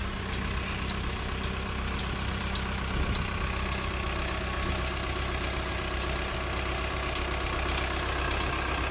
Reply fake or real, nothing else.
real